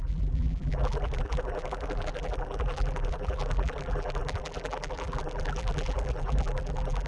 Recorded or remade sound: remade